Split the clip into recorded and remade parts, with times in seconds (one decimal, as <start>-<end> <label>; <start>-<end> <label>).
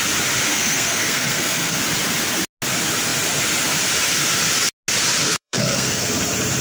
0.0-0.5 recorded; 0.5-1.8 remade; 1.8-5.2 recorded; 5.2-6.1 remade; 6.1-6.6 recorded